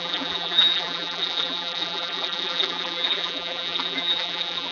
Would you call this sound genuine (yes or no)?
no